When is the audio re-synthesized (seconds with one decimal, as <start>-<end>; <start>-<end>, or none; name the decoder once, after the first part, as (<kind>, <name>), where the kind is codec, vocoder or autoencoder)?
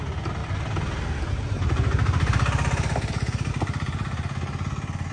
0.4-3.5 (vocoder, BigVGAN v2)